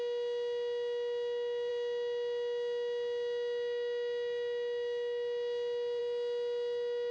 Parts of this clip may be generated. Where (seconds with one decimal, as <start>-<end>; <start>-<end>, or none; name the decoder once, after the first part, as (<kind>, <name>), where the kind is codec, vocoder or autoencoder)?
none